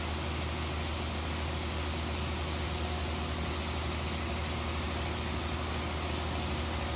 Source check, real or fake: real